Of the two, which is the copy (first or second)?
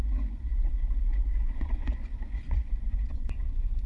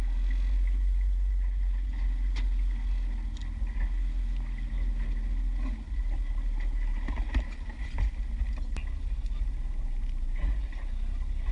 first